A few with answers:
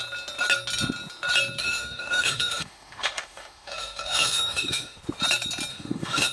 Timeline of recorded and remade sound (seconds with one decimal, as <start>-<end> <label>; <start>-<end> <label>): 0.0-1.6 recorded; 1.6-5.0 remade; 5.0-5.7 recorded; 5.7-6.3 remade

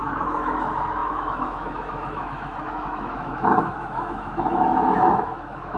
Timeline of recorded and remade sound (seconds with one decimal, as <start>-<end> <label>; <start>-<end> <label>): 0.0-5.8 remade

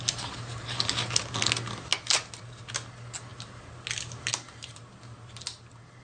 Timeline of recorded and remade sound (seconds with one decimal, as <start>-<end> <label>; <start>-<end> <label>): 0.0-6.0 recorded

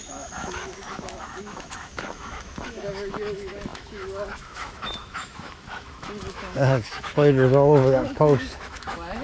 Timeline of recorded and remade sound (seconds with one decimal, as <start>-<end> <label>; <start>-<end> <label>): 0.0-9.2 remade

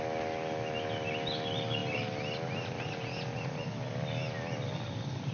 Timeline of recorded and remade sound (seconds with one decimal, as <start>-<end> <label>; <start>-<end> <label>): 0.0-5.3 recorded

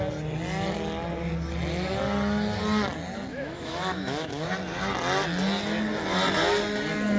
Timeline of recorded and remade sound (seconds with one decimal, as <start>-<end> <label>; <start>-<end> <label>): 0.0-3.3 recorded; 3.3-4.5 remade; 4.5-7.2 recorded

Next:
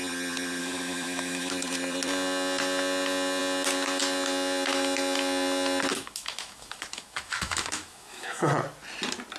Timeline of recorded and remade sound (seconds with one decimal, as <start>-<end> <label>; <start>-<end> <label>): 0.0-0.6 recorded; 0.6-1.5 remade; 1.5-5.9 recorded; 5.9-8.5 remade; 8.5-9.4 recorded

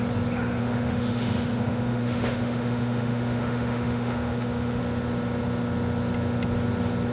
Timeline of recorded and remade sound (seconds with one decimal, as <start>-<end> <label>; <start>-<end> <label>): 0.0-0.6 recorded; 0.6-4.8 remade; 4.8-7.1 recorded